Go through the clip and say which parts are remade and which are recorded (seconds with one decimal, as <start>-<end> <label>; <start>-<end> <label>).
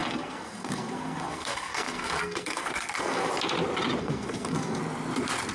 0.0-3.3 remade; 3.3-4.0 recorded; 4.0-4.8 remade; 4.8-5.5 recorded